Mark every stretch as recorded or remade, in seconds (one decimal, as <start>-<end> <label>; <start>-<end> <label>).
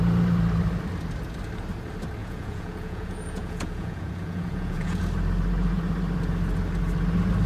0.0-2.2 recorded; 2.2-5.0 remade; 5.0-7.5 recorded